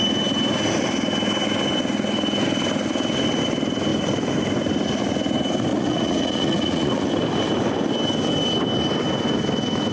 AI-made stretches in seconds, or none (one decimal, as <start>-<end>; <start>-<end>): 5.7-7.1